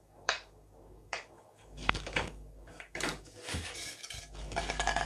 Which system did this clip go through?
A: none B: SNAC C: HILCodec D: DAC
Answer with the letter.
D